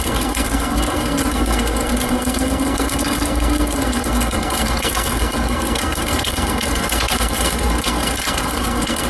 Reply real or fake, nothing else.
fake